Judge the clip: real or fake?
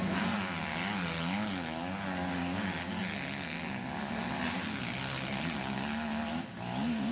real